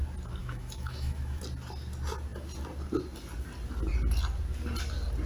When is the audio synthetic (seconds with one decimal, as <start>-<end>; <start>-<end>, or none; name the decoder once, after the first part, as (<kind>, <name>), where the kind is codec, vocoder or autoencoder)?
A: 0.4-1.4 (autoencoder, DAC-VAE)